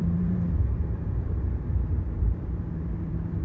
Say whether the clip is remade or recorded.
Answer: remade